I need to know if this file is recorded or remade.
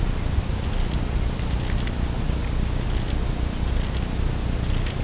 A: recorded